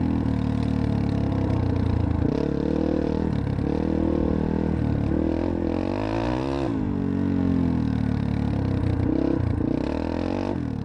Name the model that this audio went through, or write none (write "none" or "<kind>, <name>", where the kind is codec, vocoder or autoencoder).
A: none